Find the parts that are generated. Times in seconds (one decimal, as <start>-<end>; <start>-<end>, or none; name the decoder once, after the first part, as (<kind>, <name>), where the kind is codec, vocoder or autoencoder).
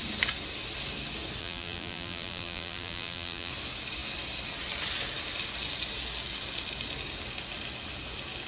1.4-3.5 (vocoder, BigVGAN v2)